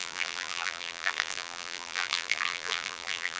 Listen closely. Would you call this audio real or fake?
fake